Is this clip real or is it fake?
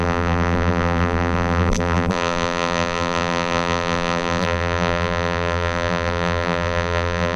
fake